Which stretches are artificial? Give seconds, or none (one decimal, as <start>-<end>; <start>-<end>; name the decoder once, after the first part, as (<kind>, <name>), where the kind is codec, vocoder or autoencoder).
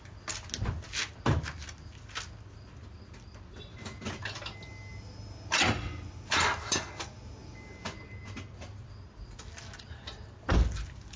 none